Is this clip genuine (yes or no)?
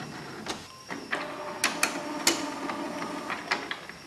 yes